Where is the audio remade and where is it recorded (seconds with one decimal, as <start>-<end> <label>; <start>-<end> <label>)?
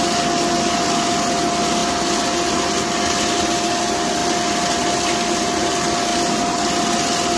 0.0-4.2 recorded; 4.2-4.9 remade; 4.9-7.4 recorded